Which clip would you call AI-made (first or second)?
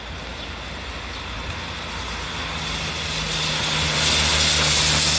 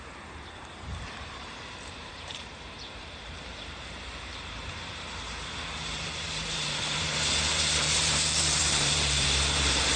second